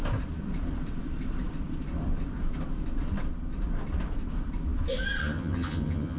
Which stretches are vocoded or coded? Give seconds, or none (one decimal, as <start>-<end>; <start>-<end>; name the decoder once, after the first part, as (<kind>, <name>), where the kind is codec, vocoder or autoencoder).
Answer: 5.2-6.2 (vocoder, HiFi-GAN)